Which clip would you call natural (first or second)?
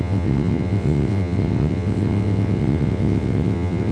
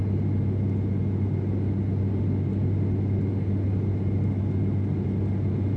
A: second